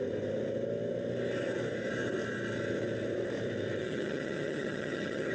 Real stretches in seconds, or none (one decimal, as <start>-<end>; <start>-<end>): 0.0-3.8